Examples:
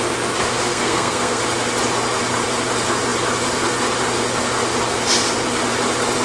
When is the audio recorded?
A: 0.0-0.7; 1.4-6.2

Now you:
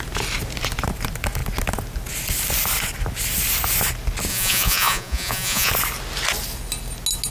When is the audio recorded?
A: 0.0-4.3; 5.7-7.3

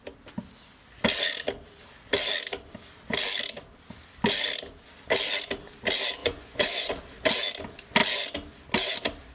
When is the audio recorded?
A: 0.0-6.2; 6.9-9.3

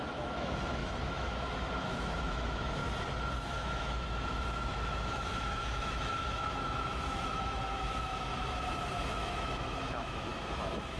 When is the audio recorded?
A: 2.8-3.4

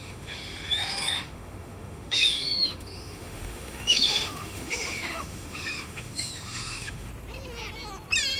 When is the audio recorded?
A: 7.1-8.4

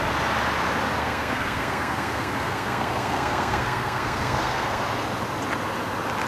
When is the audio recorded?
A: 0.0-1.0; 4.8-6.3

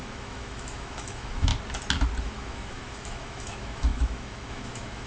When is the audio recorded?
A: 1.5-2.2